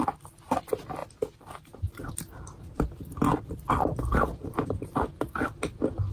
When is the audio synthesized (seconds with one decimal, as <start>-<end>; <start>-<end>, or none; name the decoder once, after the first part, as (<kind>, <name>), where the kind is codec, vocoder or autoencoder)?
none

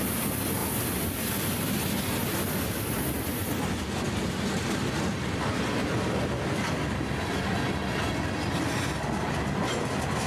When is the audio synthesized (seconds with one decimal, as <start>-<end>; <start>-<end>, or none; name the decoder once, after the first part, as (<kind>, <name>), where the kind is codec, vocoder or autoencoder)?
0.6-1.6 (vocoder, BigVGAN v2); 5.8-7.2

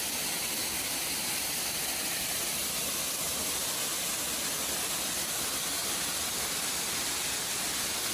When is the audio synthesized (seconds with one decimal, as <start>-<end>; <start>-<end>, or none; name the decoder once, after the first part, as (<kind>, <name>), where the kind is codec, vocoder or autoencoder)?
5.8-6.7 (vocoder, BigVGAN v2)